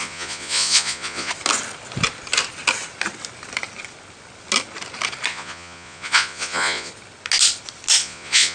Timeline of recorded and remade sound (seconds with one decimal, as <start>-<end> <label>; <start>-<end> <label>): 0.0-1.3 remade; 1.3-5.3 recorded; 5.3-6.9 remade; 6.9-8.0 recorded; 8.0-8.5 remade